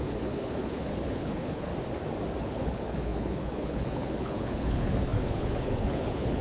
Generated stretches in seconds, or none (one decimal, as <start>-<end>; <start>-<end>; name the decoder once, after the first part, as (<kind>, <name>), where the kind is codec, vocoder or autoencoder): 0.0-1.7 (codec, HILCodec); 2.4-6.4